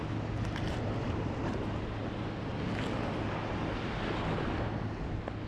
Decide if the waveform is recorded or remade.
recorded